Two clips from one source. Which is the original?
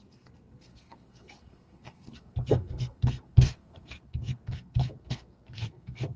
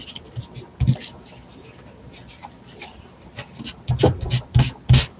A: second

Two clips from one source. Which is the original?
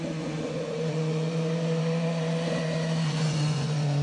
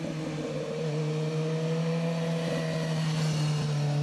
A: second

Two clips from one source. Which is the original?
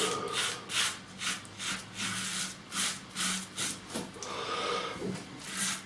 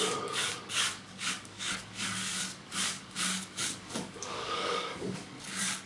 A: first